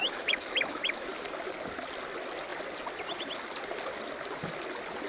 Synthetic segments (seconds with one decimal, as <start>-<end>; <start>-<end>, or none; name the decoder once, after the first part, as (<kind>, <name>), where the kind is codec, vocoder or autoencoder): 0.0-1.1 (autoencoder, DAC-VAE)